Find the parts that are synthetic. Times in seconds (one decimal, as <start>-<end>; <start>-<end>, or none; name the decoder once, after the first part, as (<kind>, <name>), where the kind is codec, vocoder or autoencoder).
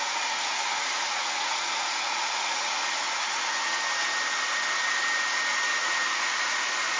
0.7-3.5 (vocoder, Vocos); 5.8-7.0